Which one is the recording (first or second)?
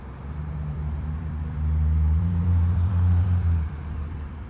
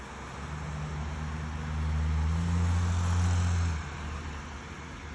second